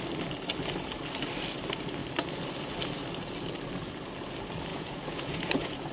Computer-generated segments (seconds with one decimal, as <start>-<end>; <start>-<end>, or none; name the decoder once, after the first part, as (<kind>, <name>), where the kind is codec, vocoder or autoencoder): 4.7-5.9 (vocoder, Vocos)